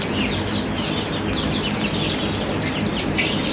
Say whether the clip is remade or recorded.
recorded